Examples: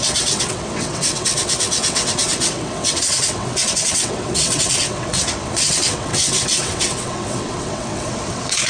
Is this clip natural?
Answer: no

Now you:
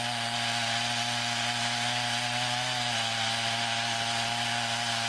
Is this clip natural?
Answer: yes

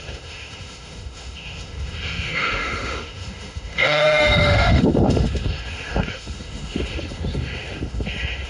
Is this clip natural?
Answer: no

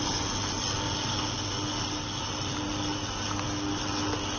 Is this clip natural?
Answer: yes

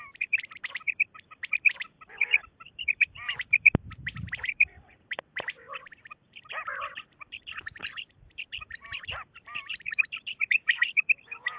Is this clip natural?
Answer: no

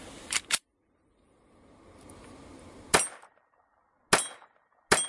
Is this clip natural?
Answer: yes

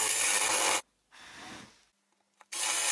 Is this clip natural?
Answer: yes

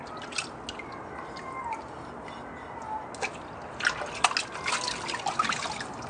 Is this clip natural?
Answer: yes